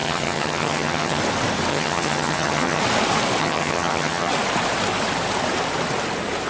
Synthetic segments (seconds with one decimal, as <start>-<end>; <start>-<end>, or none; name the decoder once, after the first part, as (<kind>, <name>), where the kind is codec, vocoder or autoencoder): 0.0-1.2 (vocoder, HiFi-GAN); 1.7-2.8; 3.4-4.3